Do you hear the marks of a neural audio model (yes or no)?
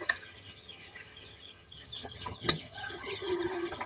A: yes